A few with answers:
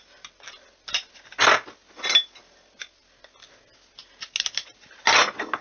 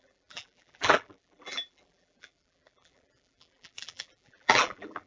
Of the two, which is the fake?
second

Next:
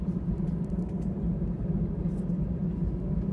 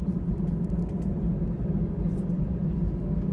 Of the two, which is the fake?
first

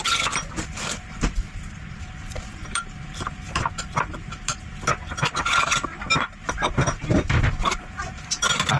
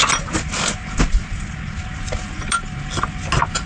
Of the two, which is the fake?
first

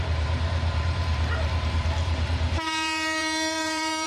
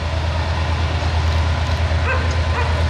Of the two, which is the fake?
first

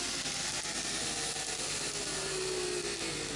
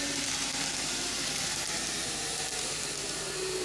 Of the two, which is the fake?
second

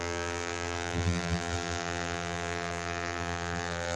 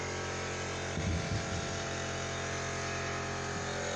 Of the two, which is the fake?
first